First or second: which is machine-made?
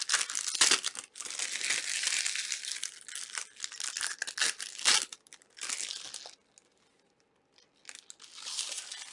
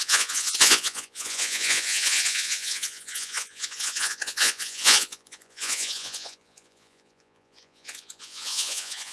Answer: second